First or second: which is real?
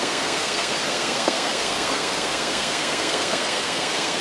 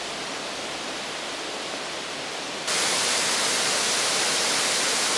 second